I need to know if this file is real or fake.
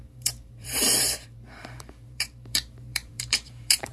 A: fake